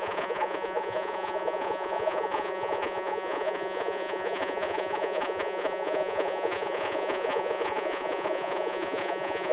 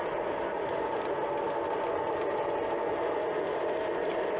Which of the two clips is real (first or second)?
second